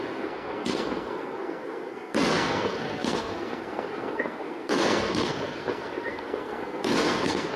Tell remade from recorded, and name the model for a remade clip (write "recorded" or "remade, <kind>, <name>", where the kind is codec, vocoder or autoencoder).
remade, codec, SNAC